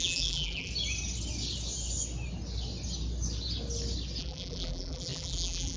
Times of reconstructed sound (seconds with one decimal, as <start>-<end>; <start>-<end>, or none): 0.0-0.7; 4.2-5.8